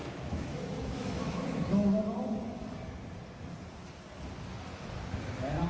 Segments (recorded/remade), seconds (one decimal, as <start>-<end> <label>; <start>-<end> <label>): 0.0-2.0 remade; 2.0-5.7 recorded